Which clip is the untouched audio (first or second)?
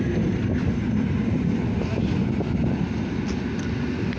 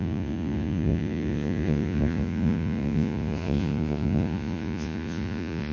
first